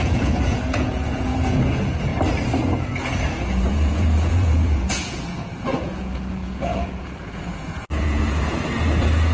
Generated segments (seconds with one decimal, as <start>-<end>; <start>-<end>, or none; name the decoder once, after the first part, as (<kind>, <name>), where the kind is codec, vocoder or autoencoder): 0.0-2.1 (vocoder, Vocos); 2.8-9.3